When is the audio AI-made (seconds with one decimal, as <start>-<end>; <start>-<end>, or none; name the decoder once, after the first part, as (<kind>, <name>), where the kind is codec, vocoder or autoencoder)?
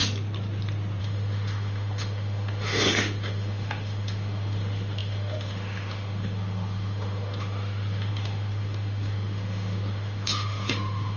1.0-11.2 (autoencoder, DAC-VAE)